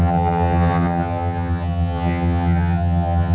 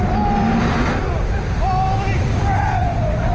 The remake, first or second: first